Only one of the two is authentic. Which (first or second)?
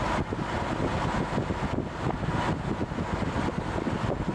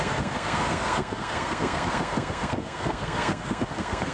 first